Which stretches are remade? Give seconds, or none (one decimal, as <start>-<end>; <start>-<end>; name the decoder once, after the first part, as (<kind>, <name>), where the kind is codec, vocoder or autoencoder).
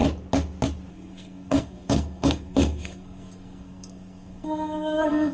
0.9-5.3 (codec, SNAC)